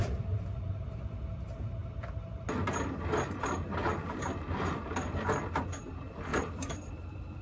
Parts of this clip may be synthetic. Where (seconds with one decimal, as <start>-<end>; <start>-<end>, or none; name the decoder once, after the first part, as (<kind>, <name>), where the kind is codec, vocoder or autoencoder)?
0.0-1.8 (vocoder, BigVGAN v2); 3.3-3.8; 4.7-7.4